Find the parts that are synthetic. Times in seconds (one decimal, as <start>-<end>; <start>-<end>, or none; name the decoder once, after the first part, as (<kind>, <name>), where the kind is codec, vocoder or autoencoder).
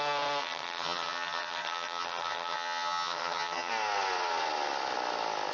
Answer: 0.4-3.7 (vocoder, HiFi-GAN)